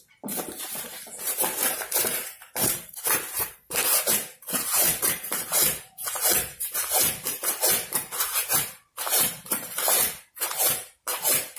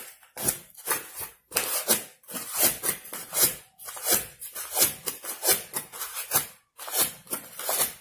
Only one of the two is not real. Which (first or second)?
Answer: first